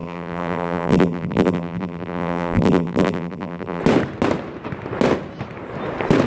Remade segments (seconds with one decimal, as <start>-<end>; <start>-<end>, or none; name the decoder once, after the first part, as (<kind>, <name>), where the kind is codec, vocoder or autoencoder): 0.0-3.8 (vocoder, BigVGAN v2)